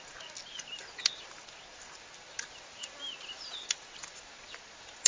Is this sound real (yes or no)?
yes